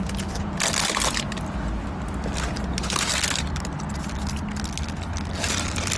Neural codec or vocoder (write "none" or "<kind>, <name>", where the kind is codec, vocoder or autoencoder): none